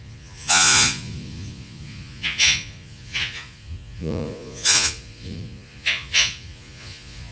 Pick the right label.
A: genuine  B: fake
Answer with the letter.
B